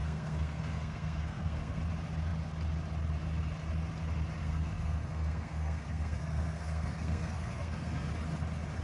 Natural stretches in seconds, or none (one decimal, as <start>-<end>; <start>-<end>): 1.8-4.4; 8.1-8.8